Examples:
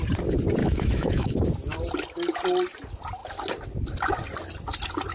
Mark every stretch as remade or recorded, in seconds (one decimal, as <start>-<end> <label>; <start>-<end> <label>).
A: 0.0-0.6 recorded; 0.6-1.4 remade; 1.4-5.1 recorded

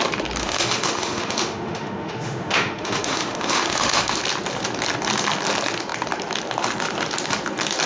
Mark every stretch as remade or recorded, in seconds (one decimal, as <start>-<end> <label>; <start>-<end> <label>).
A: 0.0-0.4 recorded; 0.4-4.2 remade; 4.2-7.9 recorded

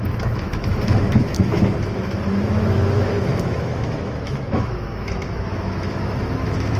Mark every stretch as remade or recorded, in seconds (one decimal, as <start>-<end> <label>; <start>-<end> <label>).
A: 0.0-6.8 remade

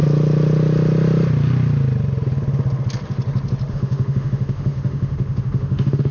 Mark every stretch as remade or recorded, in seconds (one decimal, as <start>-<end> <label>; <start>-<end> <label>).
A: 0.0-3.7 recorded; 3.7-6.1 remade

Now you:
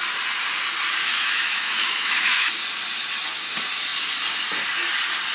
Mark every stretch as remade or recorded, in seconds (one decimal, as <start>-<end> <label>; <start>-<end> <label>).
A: 0.0-1.0 recorded; 1.0-2.5 remade; 2.5-5.3 recorded

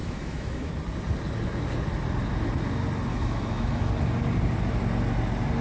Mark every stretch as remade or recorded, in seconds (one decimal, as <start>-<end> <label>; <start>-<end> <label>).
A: 0.0-0.7 remade; 0.7-3.1 recorded; 3.1-3.9 remade; 3.9-5.6 recorded